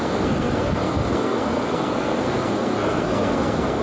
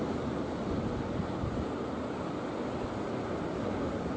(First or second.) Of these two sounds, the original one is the second